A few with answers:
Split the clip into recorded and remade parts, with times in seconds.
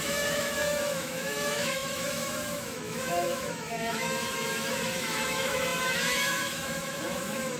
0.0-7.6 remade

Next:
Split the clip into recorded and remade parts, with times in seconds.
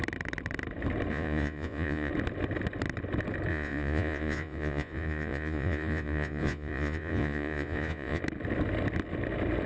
0.0-1.1 recorded; 1.1-2.1 remade; 2.1-3.5 recorded; 3.5-8.2 remade; 8.2-9.7 recorded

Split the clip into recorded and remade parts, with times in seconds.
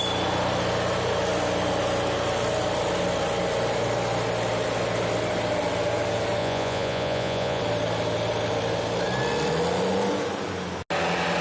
0.0-6.4 recorded; 6.4-7.6 remade; 7.6-11.4 recorded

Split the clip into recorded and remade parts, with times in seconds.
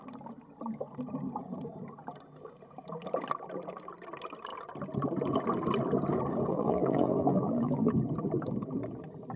0.0-6.5 recorded; 6.5-7.9 remade; 7.9-9.4 recorded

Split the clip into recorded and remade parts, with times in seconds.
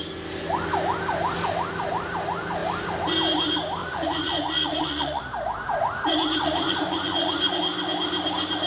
0.0-3.8 recorded; 3.8-5.2 remade; 5.2-6.4 recorded; 6.4-7.6 remade; 7.6-8.7 recorded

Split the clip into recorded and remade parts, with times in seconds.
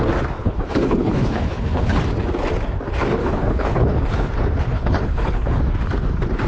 0.0-0.4 recorded; 0.4-2.0 remade; 2.0-3.2 recorded; 3.2-4.3 remade; 4.3-4.7 recorded; 4.7-5.6 remade; 5.6-6.5 recorded